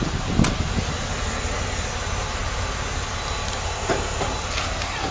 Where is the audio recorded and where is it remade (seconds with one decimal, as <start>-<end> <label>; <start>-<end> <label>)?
0.0-5.1 recorded